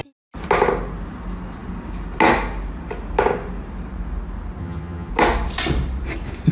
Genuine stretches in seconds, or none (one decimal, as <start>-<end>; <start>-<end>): 0.0-4.6; 5.1-6.5